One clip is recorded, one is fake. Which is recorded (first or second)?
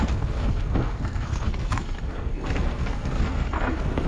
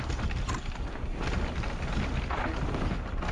second